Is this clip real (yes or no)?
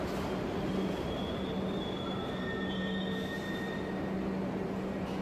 yes